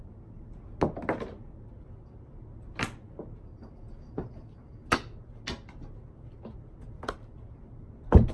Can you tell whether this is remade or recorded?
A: recorded